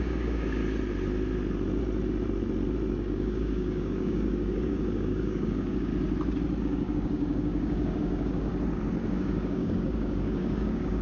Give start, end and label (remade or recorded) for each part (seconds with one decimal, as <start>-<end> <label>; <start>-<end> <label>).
0.0-0.6 remade; 0.6-2.9 recorded; 2.9-5.9 remade; 5.9-6.6 recorded; 6.6-8.5 remade; 8.5-9.1 recorded; 9.1-11.0 remade

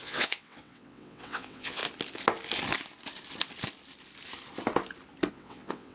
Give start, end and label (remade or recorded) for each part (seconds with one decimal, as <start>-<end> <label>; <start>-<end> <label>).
0.0-1.8 remade; 1.8-5.3 recorded; 5.3-5.9 remade

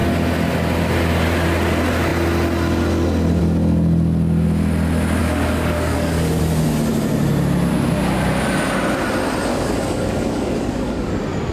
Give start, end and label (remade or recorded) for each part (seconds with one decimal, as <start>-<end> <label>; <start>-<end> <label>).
0.0-5.2 recorded; 5.2-6.4 remade; 6.4-9.5 recorded; 9.5-11.1 remade; 11.1-11.5 recorded

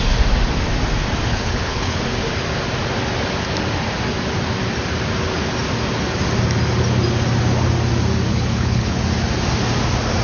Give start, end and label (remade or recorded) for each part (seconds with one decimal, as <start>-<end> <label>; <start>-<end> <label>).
0.0-1.3 recorded; 1.3-2.0 remade; 2.0-8.3 recorded; 8.3-9.0 remade; 9.0-10.2 recorded

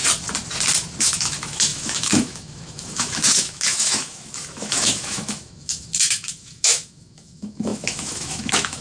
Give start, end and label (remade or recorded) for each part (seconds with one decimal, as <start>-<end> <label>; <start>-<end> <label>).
0.0-1.0 recorded; 1.0-8.8 remade

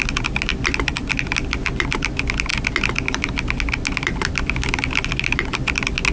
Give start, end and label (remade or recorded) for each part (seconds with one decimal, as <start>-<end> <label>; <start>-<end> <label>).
0.0-6.1 recorded